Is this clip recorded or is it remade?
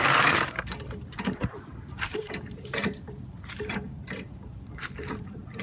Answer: remade